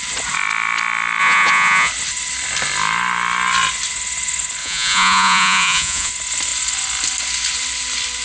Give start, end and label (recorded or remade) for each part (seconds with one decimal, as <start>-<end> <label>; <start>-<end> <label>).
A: 0.0-1.2 recorded; 1.2-1.9 remade; 1.9-4.6 recorded; 4.6-6.1 remade; 6.1-8.2 recorded